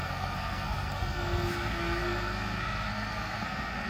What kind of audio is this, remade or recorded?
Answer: remade